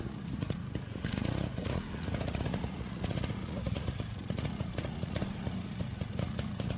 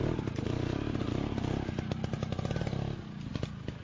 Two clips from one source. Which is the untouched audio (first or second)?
second